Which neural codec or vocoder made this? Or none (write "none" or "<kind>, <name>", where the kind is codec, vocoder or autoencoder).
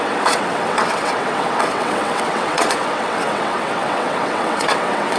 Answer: vocoder, WaveNeXt